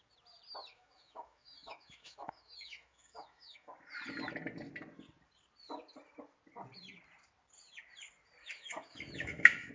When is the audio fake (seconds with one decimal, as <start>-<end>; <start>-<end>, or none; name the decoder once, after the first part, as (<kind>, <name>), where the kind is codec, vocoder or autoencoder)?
0.7-3.7 (autoencoder, DAC-VAE); 8.4-9.7